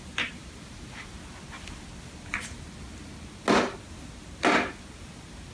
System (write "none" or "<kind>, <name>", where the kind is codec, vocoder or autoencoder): none